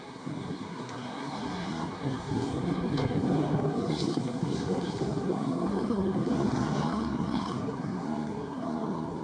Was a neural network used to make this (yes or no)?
yes